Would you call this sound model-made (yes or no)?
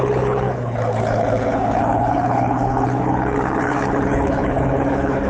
yes